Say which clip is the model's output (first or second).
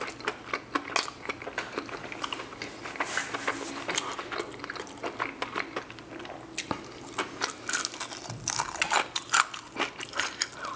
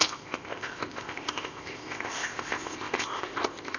second